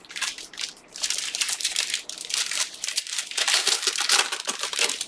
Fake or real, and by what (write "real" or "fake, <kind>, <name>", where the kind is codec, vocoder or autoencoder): fake, vocoder, BigVGAN v2